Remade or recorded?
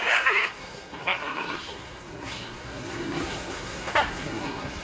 remade